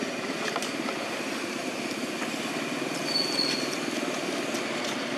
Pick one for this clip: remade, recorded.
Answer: recorded